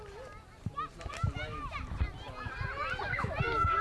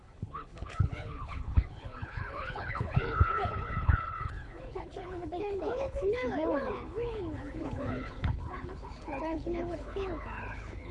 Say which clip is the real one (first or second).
first